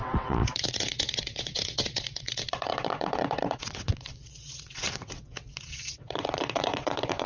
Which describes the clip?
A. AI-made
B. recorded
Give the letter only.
A